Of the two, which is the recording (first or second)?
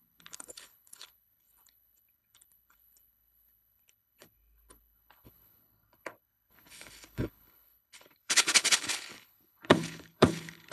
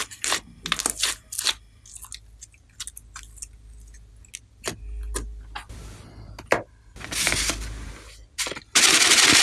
second